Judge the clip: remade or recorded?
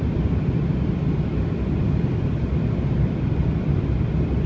recorded